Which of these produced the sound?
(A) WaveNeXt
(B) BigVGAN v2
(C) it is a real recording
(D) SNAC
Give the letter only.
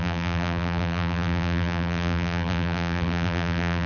B